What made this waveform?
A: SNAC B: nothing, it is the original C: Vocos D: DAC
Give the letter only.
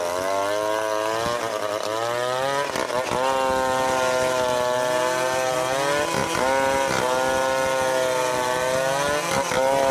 B